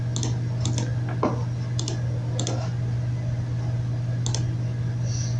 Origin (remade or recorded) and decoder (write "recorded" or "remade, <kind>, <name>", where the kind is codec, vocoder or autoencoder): recorded